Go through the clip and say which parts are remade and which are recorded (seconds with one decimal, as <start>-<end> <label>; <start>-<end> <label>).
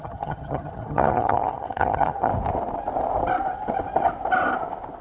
0.0-2.3 remade; 2.3-5.0 recorded